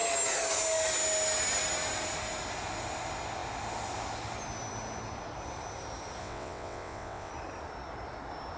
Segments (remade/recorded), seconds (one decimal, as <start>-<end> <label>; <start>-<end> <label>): 0.0-6.2 recorded; 6.2-7.3 remade; 7.3-8.6 recorded